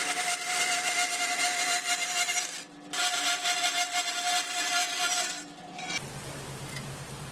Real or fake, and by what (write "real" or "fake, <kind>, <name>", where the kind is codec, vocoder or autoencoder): real